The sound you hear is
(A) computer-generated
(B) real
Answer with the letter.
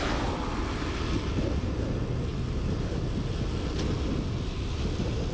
B